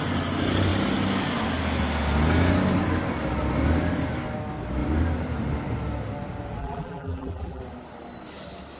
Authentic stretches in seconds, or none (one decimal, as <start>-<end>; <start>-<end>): 0.0-6.6; 7.6-8.8